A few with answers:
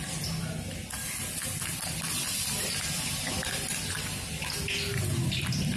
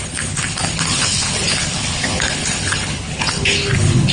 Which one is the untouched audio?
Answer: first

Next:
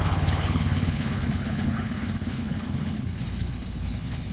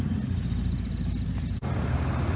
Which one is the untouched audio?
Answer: second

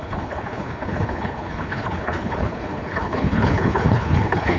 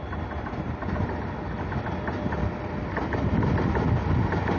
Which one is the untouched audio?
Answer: second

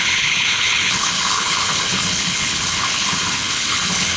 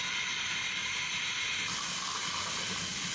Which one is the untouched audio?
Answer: second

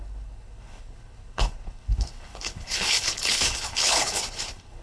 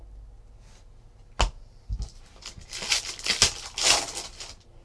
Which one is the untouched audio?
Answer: second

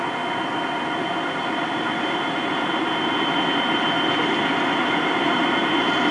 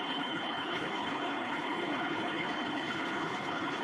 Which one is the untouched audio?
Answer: first